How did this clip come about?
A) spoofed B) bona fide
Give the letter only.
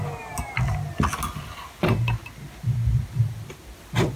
B